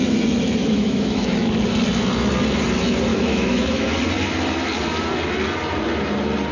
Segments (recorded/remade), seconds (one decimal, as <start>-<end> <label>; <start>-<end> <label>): 0.0-0.6 recorded; 0.6-1.3 remade; 1.3-3.1 recorded; 3.1-3.9 remade; 3.9-6.5 recorded